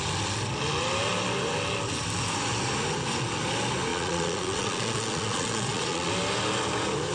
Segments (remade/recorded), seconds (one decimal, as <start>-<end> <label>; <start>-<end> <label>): 0.0-3.9 recorded; 3.9-6.1 remade; 6.1-7.1 recorded